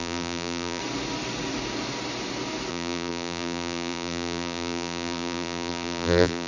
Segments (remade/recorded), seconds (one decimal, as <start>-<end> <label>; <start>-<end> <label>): 0.0-0.8 remade; 0.8-2.7 recorded; 2.7-6.5 remade